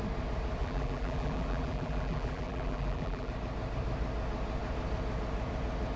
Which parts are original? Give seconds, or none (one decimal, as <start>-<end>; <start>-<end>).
0.0-0.6; 3.3-6.0